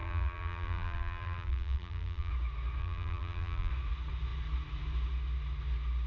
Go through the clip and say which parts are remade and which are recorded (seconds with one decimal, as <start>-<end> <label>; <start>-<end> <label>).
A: 0.0-2.3 remade; 2.3-2.8 recorded; 2.8-3.7 remade; 3.7-6.1 recorded